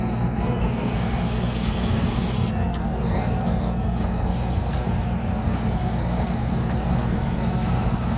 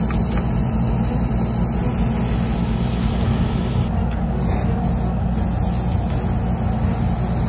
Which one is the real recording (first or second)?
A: second